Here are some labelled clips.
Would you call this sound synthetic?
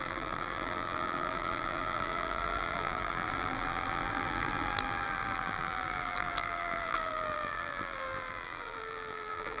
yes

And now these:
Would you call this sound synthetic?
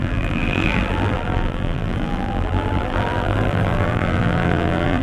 yes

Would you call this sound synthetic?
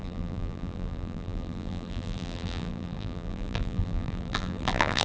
yes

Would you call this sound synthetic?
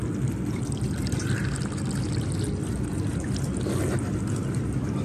no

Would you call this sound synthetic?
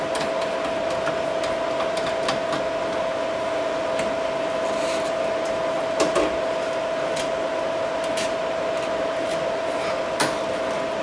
no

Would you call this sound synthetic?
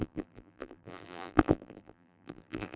yes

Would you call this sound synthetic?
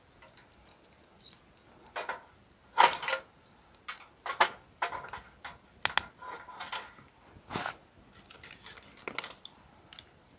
no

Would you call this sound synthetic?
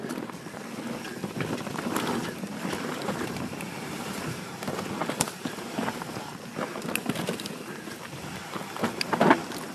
no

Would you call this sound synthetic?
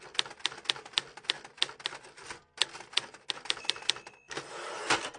no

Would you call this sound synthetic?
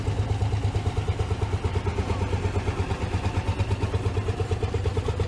no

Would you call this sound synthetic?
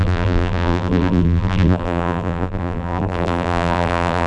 yes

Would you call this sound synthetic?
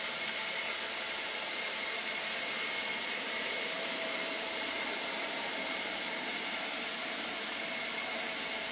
yes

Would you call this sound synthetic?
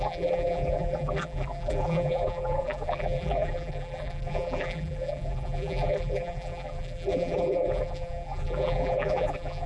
yes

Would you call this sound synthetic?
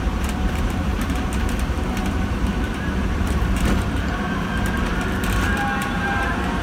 yes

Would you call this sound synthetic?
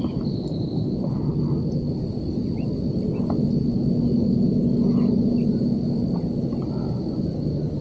no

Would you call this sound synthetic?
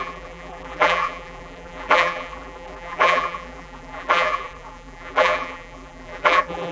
yes